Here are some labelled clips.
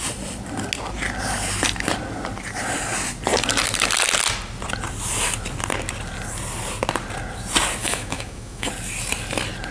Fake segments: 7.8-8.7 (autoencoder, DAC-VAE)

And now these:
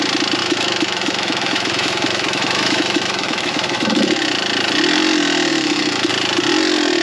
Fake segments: 0.4-4.2 (autoencoder, DAC-VAE); 5.5-6.1

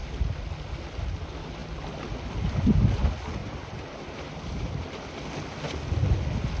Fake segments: 3.4-4.8 (vocoder, BigVGAN v2)

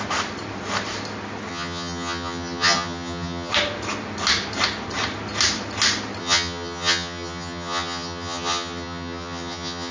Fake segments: 1.5-3.5 (vocoder, HiFi-GAN); 6.2-9.9

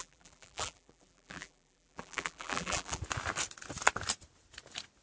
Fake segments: 0.0-3.0 (vocoder, BigVGAN v2)